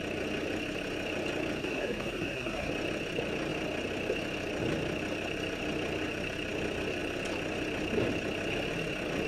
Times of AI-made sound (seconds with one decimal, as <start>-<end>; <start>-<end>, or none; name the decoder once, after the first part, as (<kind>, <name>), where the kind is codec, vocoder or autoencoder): 1.6-2.7 (codec, SNAC)